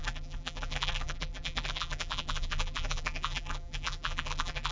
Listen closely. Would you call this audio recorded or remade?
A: remade